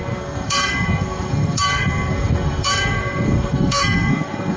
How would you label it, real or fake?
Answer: fake